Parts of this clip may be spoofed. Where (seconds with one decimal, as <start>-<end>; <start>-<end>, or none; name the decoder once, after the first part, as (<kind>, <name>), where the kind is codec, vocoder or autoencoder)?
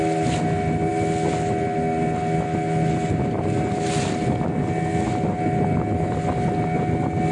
none